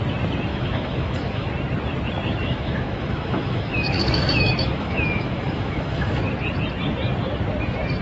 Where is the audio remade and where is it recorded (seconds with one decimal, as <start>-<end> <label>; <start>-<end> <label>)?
0.0-0.5 recorded; 0.5-1.5 remade; 1.5-2.4 recorded; 2.4-6.1 remade; 6.1-8.0 recorded